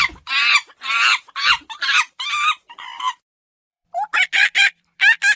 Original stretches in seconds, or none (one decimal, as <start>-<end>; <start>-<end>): 1.1-3.7